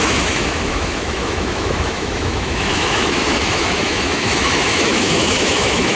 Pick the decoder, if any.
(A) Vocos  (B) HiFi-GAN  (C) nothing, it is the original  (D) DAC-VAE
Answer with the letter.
D